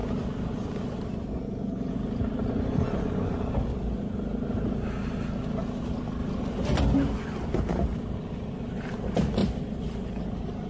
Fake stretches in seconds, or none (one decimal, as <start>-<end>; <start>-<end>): 6.2-6.8; 9.4-10.2